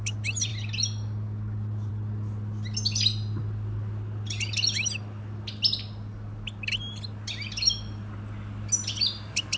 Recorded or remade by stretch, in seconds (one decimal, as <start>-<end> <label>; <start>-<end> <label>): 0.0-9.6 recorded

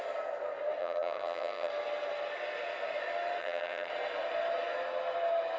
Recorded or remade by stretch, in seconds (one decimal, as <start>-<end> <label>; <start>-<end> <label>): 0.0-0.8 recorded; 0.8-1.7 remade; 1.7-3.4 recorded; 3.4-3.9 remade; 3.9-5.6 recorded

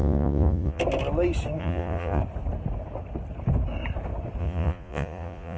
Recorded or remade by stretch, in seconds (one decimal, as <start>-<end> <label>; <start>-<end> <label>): 0.0-0.8 remade; 0.8-1.6 recorded; 1.6-2.2 remade; 2.2-4.4 recorded; 4.4-5.6 remade